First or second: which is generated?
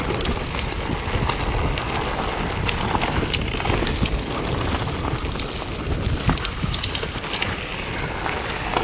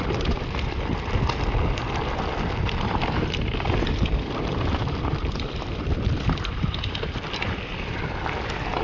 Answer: second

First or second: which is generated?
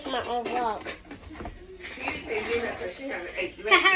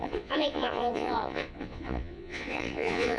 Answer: second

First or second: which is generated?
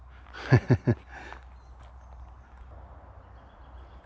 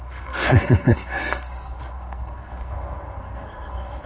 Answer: second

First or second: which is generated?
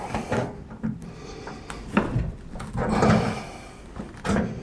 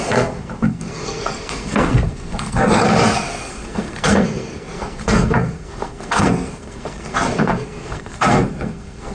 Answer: second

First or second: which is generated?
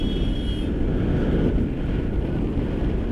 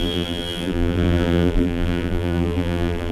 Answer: second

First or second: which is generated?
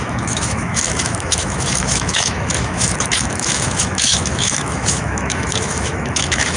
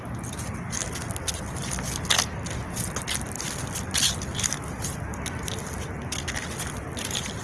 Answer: first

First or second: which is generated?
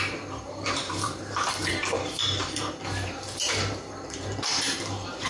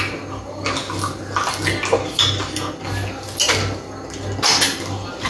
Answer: first